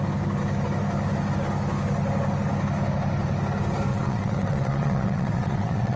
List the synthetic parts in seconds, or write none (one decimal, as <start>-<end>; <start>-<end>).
3.9-6.0